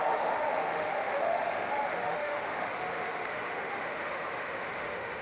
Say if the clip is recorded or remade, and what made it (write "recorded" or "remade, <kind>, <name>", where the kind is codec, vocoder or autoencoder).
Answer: remade, autoencoder, DAC-VAE